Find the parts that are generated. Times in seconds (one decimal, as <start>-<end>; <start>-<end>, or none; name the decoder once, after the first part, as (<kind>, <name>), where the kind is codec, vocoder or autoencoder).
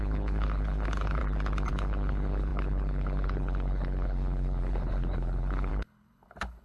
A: 0.0-1.2 (codec, HILCodec); 1.7-6.6